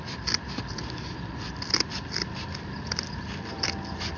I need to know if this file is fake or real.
real